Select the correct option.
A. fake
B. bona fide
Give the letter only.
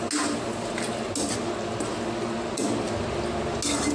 B